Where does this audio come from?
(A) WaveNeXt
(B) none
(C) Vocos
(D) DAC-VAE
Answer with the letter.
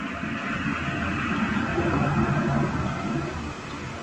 B